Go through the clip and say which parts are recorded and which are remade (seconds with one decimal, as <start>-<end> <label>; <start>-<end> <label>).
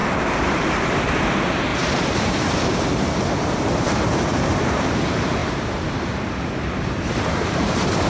0.0-8.1 remade